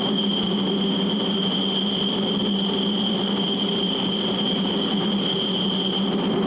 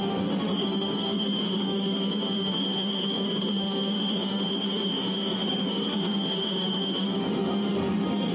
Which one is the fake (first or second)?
second